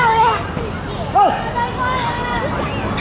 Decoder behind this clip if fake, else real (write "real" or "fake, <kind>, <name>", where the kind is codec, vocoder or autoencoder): real